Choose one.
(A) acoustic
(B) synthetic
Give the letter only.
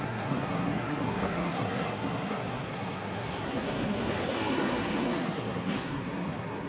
B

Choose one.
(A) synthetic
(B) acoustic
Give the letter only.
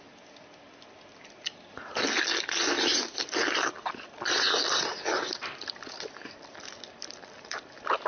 B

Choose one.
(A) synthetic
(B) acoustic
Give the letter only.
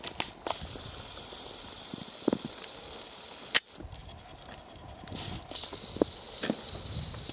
B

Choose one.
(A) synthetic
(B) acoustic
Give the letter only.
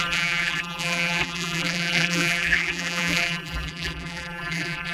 A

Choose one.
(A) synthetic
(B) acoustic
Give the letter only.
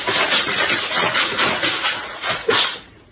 A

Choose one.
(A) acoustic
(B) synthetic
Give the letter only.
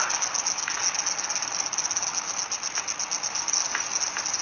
A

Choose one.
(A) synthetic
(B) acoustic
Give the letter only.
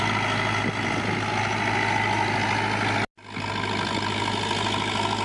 B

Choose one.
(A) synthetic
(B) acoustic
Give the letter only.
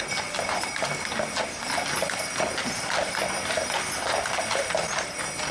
B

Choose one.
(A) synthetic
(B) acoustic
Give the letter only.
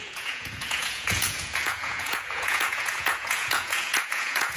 A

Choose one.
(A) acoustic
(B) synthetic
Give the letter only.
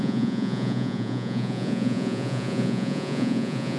B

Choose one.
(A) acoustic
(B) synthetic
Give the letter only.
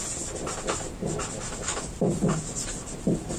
A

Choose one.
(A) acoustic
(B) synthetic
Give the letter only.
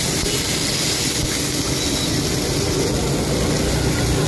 A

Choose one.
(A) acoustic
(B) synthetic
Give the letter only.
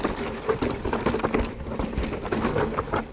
A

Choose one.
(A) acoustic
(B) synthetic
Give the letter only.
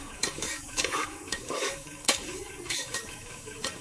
B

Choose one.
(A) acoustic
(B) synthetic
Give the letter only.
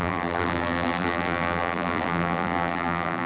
B